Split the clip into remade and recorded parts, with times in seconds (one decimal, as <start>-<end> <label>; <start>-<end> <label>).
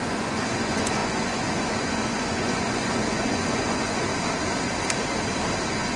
0.0-4.1 remade; 4.1-5.6 recorded; 5.6-6.0 remade